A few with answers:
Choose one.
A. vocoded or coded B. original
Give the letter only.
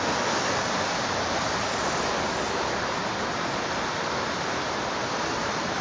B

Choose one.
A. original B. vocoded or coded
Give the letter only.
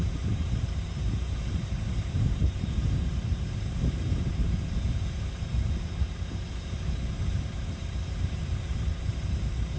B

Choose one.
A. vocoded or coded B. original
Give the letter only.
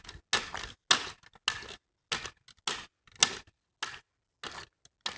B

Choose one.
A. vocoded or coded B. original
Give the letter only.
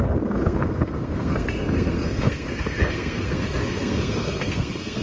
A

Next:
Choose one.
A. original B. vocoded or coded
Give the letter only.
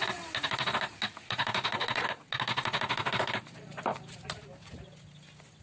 A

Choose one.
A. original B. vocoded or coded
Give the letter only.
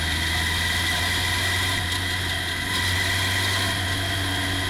A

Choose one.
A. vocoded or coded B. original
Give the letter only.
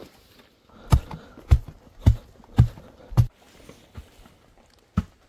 B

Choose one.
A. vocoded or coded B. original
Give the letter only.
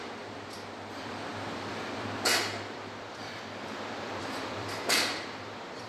A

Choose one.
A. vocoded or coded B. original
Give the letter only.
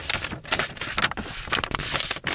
B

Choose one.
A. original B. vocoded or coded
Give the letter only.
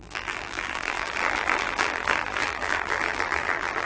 B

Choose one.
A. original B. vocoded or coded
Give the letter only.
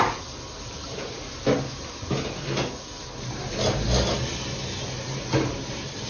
A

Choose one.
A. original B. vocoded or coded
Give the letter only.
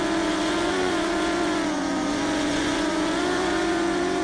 B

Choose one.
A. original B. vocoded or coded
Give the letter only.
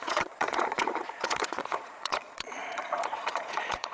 B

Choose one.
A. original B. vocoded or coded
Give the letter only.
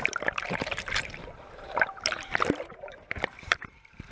B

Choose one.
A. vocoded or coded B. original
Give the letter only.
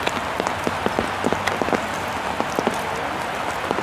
B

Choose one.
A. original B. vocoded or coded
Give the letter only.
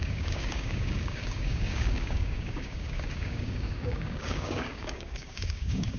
B